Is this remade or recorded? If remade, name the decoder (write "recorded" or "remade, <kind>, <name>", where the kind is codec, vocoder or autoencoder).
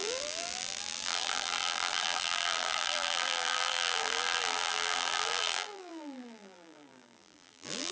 remade, vocoder, BigVGAN v2